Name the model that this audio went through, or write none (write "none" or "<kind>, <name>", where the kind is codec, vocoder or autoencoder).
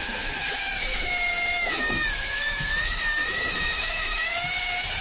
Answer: autoencoder, DAC-VAE